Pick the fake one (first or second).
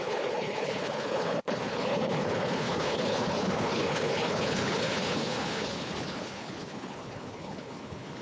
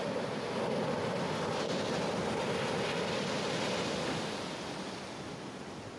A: first